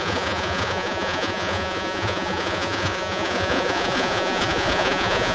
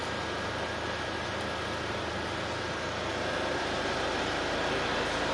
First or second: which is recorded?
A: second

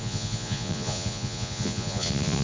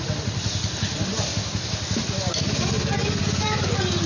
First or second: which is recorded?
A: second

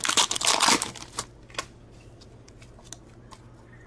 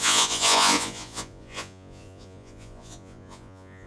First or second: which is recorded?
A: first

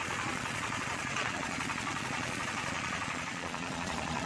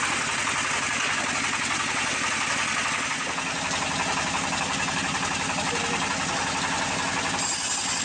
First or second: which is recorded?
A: second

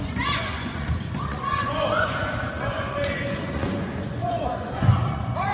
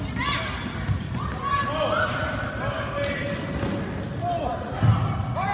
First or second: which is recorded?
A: second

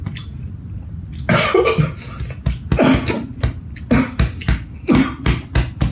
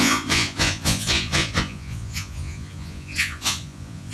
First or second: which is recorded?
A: first